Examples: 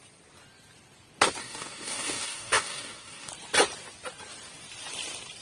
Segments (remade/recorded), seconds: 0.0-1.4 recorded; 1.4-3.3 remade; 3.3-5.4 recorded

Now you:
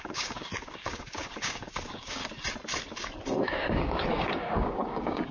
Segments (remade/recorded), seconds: 0.0-2.2 remade; 2.2-3.4 recorded; 3.4-5.3 remade

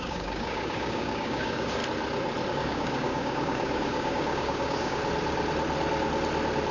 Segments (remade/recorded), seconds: 0.0-1.8 remade; 1.8-2.5 recorded; 2.5-5.0 remade; 5.0-6.7 recorded

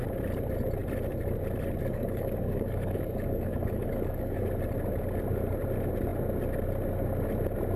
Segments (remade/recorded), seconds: 0.0-1.8 recorded; 1.8-4.5 remade; 4.5-7.8 recorded

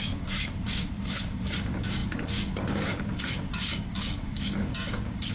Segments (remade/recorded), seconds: 0.0-5.3 remade

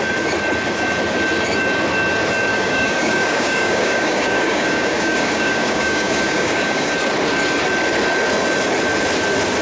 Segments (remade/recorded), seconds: 0.0-2.5 recorded; 2.5-6.9 remade; 6.9-9.6 recorded

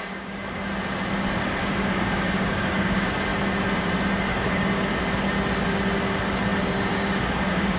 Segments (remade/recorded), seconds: 0.0-0.4 remade; 0.4-1.6 recorded; 1.6-3.3 remade; 3.3-4.3 recorded; 4.3-4.9 remade; 4.9-6.6 recorded; 6.6-7.8 remade

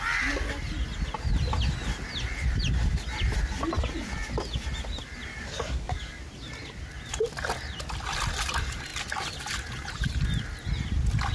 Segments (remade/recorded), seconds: 0.0-5.3 recorded; 5.3-6.2 remade; 6.2-11.3 recorded